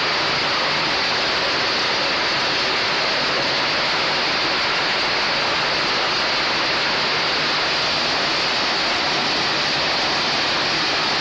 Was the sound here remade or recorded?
recorded